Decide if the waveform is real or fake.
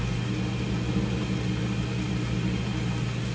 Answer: real